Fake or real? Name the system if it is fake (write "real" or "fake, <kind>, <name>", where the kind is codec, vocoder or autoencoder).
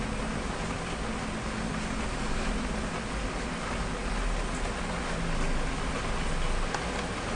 real